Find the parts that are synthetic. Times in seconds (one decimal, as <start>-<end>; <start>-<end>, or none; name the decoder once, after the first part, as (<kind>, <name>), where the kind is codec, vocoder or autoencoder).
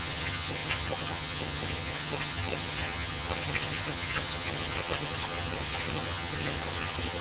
0.0-7.2 (vocoder, HiFi-GAN)